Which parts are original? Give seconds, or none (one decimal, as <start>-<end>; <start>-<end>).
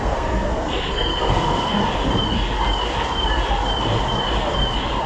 1.8-5.1